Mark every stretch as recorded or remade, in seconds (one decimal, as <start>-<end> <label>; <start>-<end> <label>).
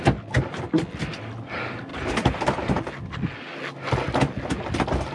0.0-1.9 recorded; 1.9-2.8 remade; 2.8-5.1 recorded